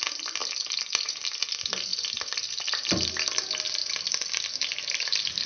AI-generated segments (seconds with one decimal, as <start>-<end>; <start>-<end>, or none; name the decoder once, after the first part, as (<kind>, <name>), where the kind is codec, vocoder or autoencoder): none